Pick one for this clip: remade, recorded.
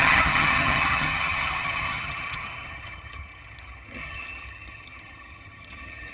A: remade